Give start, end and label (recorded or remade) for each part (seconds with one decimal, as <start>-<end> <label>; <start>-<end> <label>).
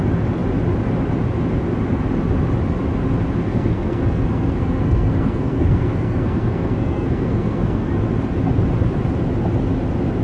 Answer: 0.0-3.5 recorded; 3.5-8.0 remade; 8.0-10.2 recorded